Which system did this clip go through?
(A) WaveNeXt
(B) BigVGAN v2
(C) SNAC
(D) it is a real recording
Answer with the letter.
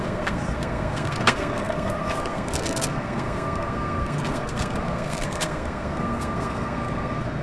C